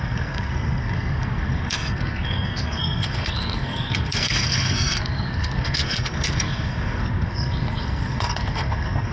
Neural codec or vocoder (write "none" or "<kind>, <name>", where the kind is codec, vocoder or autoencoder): codec, SNAC